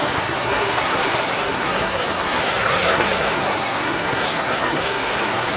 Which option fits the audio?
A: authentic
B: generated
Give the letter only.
B